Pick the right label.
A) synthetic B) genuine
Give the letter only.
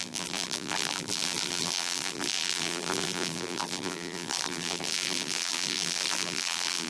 A